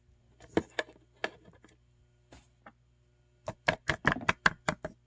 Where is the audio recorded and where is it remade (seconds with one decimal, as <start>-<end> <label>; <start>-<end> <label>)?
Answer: 0.0-5.1 recorded